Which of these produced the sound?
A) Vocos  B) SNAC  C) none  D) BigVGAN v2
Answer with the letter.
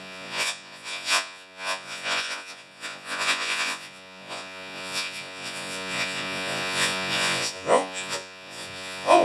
A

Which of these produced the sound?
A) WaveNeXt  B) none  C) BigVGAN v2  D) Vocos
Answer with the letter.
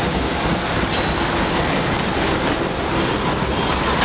B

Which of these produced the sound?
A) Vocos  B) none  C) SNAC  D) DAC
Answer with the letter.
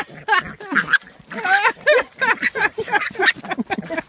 B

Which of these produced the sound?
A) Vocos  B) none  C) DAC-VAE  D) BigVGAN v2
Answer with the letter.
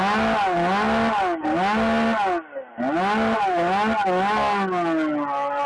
B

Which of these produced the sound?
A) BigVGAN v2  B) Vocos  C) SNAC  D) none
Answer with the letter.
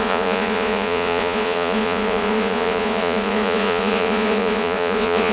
B